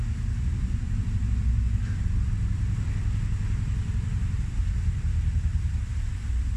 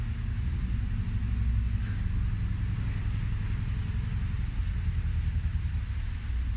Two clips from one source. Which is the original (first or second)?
second